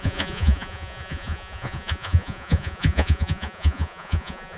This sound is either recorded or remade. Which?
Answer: remade